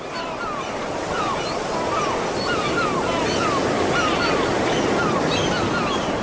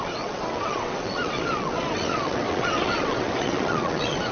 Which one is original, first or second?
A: first